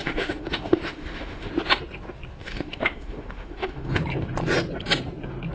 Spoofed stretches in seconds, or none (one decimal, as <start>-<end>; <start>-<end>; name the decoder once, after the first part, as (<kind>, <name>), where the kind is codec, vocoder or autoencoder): 0.0-1.5 (autoencoder, DAC-VAE); 2.4-4.0